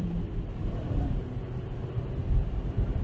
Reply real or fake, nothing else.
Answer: fake